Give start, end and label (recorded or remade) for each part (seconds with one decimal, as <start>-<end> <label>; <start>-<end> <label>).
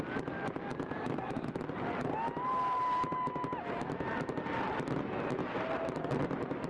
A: 0.0-6.7 recorded